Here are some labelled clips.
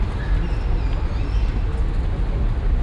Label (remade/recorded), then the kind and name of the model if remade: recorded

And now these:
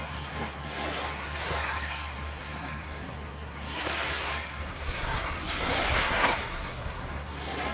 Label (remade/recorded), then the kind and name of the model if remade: remade, codec, SNAC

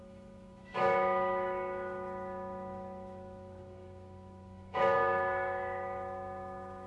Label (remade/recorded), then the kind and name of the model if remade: remade, autoencoder, DAC-VAE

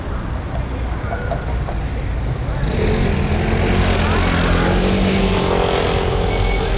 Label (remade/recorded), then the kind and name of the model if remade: recorded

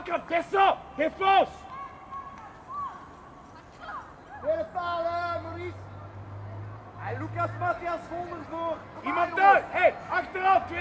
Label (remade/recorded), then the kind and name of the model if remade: recorded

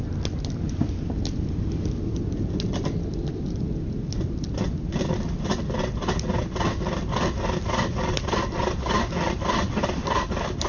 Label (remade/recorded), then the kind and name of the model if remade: recorded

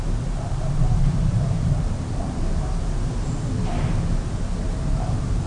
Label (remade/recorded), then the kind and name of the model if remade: remade, vocoder, BigVGAN v2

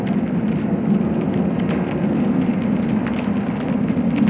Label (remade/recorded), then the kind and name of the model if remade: recorded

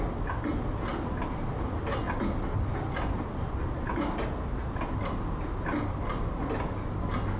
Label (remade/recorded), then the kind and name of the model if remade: recorded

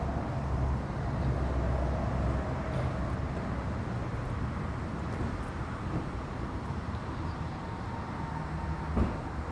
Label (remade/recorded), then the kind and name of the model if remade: recorded